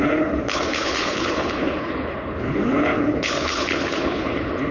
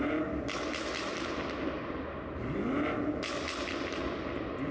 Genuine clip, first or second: second